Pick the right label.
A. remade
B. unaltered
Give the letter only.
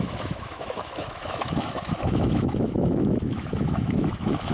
A